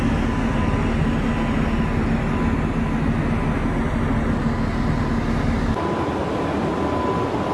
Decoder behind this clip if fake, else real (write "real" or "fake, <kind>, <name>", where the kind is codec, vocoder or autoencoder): real